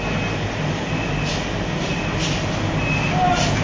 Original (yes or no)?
yes